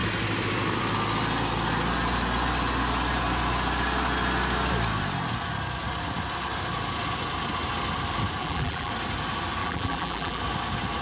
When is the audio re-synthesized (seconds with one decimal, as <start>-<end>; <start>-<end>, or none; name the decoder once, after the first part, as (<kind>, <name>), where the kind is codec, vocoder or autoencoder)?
8.4-8.9 (vocoder, BigVGAN v2); 9.6-10.4